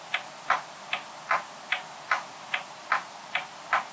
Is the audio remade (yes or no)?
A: no